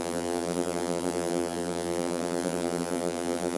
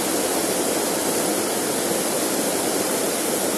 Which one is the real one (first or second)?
second